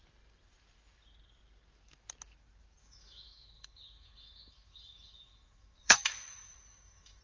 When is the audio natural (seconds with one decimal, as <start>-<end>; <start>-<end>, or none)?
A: 0.0-2.8